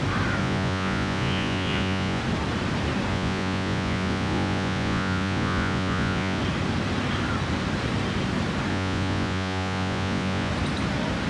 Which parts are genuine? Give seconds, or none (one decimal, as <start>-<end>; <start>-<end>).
0.0-0.4; 2.2-3.1; 6.4-8.7; 10.5-11.3